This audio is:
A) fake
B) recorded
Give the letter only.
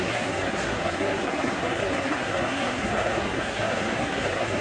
A